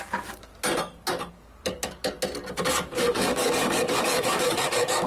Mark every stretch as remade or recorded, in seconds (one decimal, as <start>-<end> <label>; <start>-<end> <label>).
0.0-0.5 remade; 0.5-1.3 recorded; 1.3-2.1 remade; 2.1-2.7 recorded; 2.7-5.1 remade